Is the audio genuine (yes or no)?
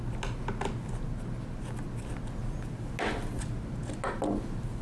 yes